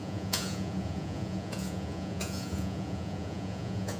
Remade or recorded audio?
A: remade